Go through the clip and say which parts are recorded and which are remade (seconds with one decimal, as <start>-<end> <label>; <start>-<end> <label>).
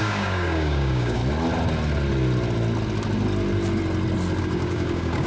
0.0-1.2 remade; 1.2-4.4 recorded; 4.4-5.3 remade